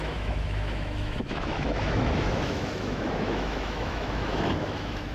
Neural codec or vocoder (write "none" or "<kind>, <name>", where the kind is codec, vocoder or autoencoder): autoencoder, DAC-VAE